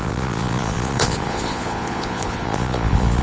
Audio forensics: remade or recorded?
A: remade